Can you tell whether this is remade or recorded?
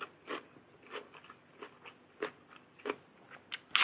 recorded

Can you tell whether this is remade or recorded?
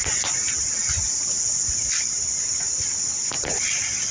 recorded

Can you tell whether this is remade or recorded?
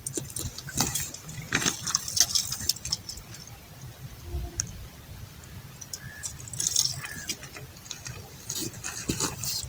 recorded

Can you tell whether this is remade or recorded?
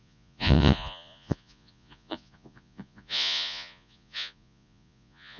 remade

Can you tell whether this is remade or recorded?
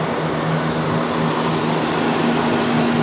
recorded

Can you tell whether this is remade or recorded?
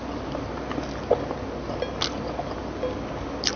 recorded